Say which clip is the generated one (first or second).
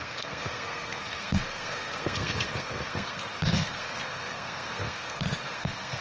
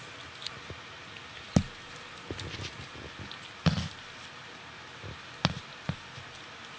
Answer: first